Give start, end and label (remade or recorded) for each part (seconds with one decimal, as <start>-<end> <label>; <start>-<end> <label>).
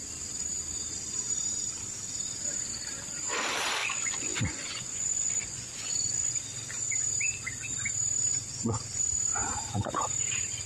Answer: 0.0-3.8 recorded; 3.8-6.4 remade; 6.4-8.3 recorded; 8.3-9.0 remade; 9.0-10.7 recorded